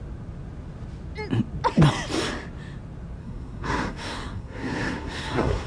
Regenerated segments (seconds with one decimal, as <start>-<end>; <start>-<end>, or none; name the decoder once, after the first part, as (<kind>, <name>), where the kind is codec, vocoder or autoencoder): 3.2-5.7 (codec, SNAC)

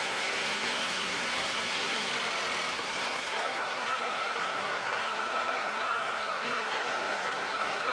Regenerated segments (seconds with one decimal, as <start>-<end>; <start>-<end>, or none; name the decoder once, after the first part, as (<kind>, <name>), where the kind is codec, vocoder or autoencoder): 0.0-2.1 (codec, SNAC); 2.7-7.9

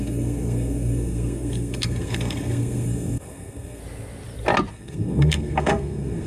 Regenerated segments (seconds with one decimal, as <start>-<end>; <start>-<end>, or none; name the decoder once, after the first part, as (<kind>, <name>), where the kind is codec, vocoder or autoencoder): 0.0-3.8 (codec, SNAC); 4.7-6.3

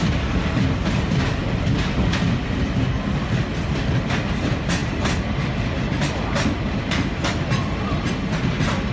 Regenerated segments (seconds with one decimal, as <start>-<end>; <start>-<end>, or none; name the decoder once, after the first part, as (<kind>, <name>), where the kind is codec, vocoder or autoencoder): none

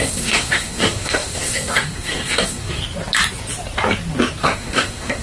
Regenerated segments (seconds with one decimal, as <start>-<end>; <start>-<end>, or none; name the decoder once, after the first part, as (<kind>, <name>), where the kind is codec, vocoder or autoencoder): 0.0-2.8 (codec, SNAC); 4.4-5.2